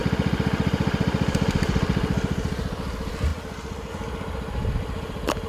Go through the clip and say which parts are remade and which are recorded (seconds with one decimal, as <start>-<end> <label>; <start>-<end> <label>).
0.0-5.5 recorded